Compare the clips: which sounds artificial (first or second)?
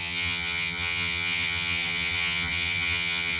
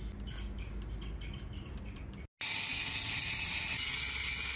first